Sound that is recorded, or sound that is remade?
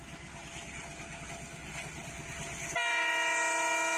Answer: recorded